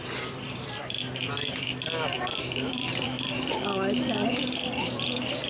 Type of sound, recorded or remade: remade